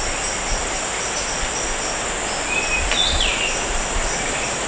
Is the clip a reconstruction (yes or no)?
no